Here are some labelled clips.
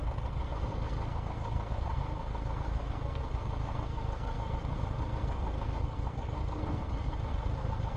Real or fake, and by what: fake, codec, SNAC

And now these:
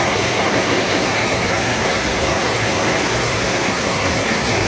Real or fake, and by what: fake, codec, SNAC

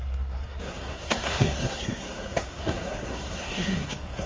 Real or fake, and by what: fake, codec, SNAC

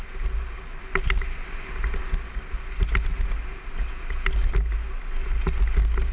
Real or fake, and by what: real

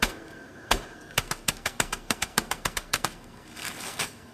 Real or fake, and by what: fake, codec, SNAC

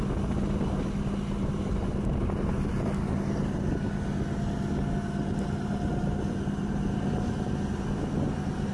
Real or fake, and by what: real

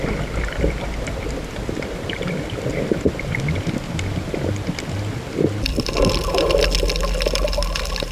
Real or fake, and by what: real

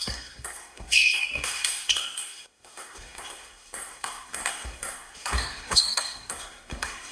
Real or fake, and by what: fake, codec, SNAC